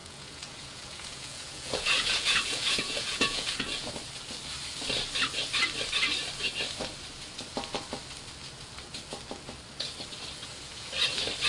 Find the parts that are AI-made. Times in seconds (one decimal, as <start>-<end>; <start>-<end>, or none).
0.0-3.9; 10.4-10.9